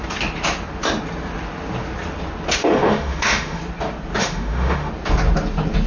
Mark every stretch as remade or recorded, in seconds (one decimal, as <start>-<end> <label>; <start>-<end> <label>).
0.0-2.6 recorded; 2.6-3.6 remade; 3.6-4.2 recorded; 4.2-4.9 remade; 4.9-5.9 recorded